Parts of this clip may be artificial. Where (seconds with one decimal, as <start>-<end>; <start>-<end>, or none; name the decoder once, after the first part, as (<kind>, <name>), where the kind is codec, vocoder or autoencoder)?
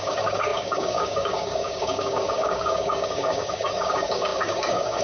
0.0-5.0 (codec, DAC)